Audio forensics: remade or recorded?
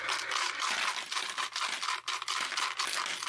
recorded